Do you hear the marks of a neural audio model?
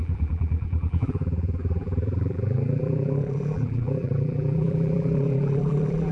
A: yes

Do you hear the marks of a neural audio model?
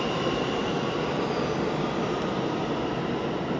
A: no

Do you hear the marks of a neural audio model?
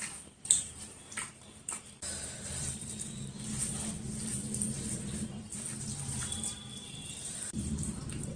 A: yes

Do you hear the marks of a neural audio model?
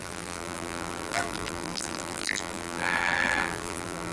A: yes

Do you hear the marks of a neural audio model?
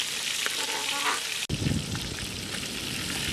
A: no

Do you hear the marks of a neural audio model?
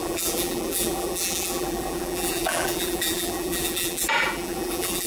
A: yes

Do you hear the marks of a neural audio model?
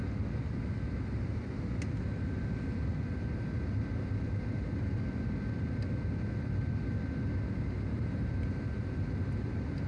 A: no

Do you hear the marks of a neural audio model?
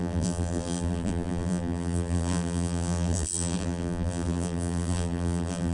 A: yes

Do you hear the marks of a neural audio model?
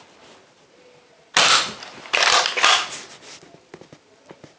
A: no